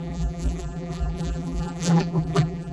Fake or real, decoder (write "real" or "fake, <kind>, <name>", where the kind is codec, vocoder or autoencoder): fake, vocoder, BigVGAN v2